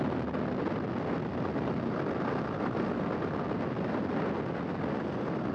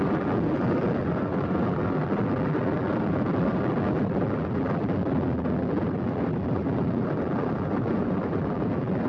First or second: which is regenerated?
second